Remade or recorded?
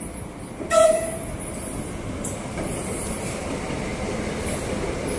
recorded